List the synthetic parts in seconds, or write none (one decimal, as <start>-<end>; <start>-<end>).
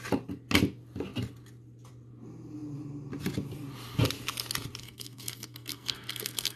4.8-6.6